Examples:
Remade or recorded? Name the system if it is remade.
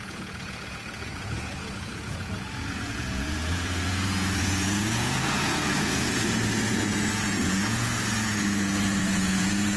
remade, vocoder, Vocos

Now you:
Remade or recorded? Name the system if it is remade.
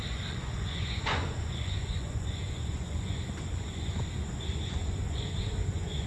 remade, vocoder, Vocos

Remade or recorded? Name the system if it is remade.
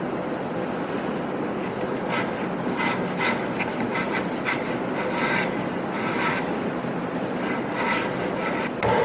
recorded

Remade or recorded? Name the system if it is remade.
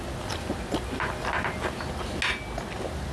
recorded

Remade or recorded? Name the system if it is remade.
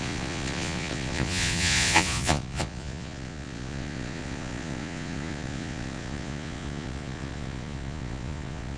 remade, vocoder, Vocos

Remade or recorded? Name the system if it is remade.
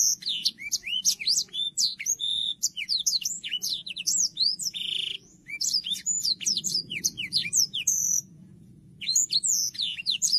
remade, vocoder, Vocos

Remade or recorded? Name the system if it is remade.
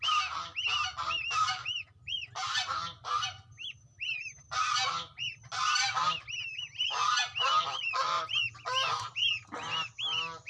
recorded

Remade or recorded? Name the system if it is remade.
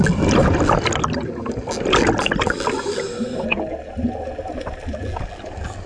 recorded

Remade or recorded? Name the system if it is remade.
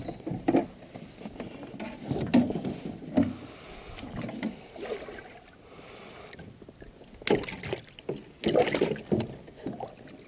recorded